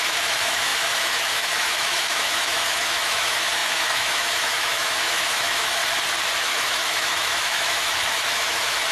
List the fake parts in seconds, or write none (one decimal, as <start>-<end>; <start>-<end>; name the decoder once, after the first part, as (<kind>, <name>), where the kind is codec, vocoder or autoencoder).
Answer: 0.0-5.8 (autoencoder, DAC-VAE); 6.4-8.9